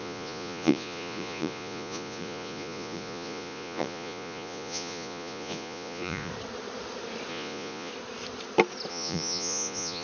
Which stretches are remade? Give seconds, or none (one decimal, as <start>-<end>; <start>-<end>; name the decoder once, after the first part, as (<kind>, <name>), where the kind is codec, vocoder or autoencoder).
0.0-6.3 (vocoder, Vocos); 7.3-7.9; 8.9-10.0